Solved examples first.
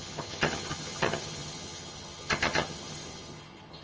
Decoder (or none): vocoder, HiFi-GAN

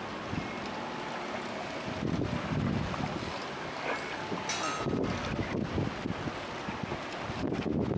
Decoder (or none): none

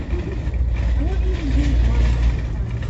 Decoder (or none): none